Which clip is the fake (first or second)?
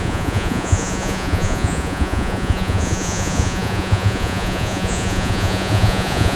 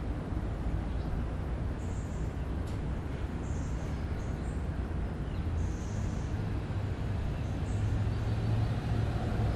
first